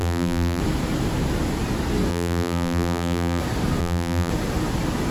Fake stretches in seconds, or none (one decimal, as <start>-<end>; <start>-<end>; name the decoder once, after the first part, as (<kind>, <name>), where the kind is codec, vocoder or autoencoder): 0.0-0.6 (vocoder, BigVGAN v2); 2.1-3.4; 3.8-4.3